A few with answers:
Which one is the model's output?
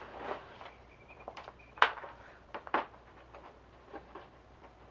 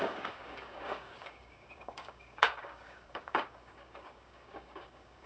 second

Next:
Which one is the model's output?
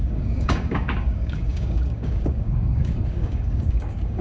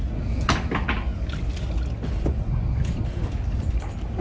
first